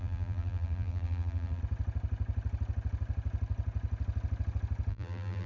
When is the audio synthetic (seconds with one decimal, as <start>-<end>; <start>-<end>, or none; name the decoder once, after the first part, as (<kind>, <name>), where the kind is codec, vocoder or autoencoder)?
0.0-1.6 (vocoder, BigVGAN v2); 4.9-5.5